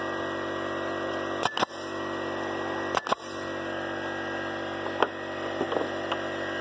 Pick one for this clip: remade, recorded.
recorded